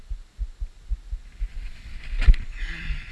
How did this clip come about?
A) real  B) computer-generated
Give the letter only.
A